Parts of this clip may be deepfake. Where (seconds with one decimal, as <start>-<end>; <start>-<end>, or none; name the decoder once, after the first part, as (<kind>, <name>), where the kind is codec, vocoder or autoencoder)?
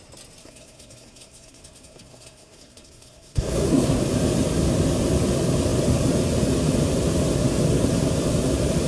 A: 0.4-4.0 (codec, SNAC)